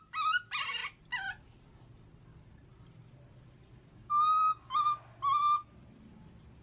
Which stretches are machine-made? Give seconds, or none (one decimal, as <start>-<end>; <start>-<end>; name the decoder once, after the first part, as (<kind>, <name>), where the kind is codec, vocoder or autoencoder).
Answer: 3.9-4.7 (codec, DAC)

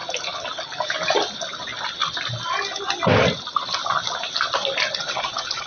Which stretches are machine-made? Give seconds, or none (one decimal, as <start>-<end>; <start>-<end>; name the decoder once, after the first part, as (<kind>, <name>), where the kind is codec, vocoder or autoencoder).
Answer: 5.0-5.7 (vocoder, Vocos)

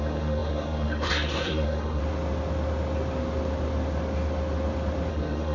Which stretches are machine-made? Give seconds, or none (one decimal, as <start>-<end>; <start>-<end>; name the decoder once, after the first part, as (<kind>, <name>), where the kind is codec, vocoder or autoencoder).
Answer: 0.0-2.0 (codec, SNAC); 5.1-5.5

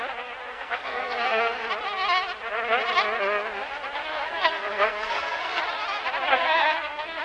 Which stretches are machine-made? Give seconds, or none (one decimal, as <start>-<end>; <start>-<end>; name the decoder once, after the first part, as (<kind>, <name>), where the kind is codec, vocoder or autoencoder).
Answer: 0.5-1.6 (codec, SNAC); 4.1-5.6; 6.3-7.2